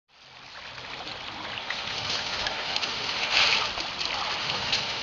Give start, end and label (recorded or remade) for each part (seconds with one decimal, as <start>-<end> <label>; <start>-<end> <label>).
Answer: 0.0-1.6 recorded; 1.6-3.4 remade; 3.4-4.4 recorded; 4.4-5.0 remade